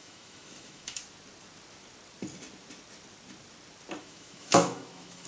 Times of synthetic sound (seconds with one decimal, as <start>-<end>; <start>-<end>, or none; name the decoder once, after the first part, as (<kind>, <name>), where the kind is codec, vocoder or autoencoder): 0.0-1.0 (autoencoder, DAC-VAE); 4.0-5.3